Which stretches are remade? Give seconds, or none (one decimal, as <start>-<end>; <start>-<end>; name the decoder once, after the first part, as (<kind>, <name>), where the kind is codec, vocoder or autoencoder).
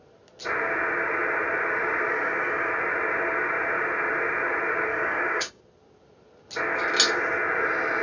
2.1-2.7 (codec, DAC); 4.9-5.6